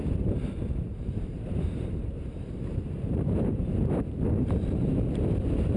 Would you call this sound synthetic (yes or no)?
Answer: yes